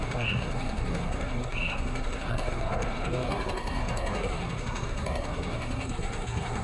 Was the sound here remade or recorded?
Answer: remade